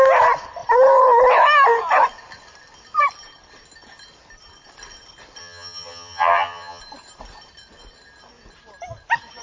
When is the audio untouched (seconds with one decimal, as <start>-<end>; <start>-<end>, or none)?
0.0-5.4; 6.8-9.4